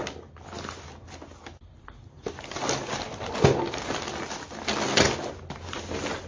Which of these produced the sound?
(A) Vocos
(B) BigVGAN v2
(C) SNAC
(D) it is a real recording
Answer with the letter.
D